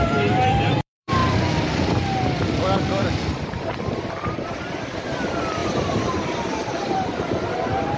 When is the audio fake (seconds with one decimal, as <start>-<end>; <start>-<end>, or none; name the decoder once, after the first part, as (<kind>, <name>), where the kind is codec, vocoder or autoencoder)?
0.0-5.6 (vocoder, BigVGAN v2); 6.5-7.1